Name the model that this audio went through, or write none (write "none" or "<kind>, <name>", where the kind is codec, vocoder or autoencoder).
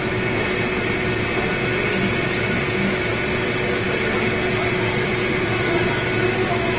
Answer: none